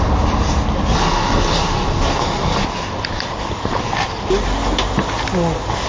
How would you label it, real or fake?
real